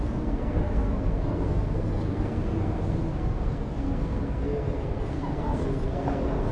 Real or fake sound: fake